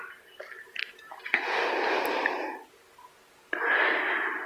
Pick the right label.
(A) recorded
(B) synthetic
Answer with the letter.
A